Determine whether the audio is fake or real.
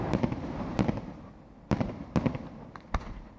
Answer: fake